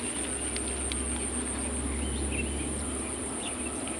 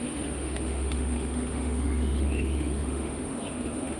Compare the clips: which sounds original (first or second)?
first